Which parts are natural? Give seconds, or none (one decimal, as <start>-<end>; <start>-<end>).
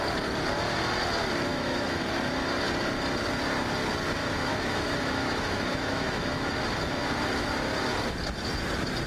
0.0-1.5; 2.0-4.2; 6.5-9.1